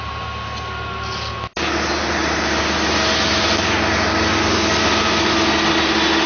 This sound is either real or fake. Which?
real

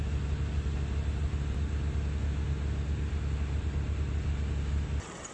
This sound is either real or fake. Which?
real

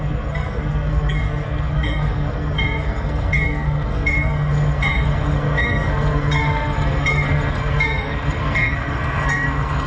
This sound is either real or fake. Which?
fake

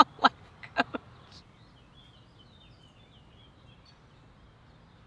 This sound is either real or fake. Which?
real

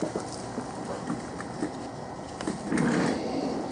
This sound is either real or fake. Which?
real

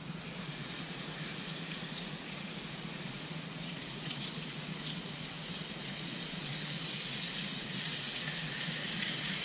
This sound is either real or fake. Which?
fake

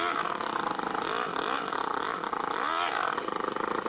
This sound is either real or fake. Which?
real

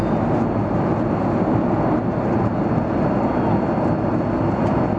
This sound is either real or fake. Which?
real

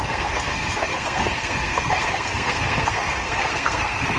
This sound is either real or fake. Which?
fake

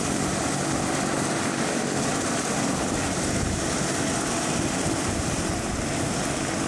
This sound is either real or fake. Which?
real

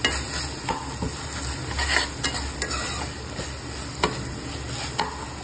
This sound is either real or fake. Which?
real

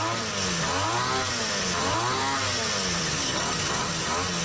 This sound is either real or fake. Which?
real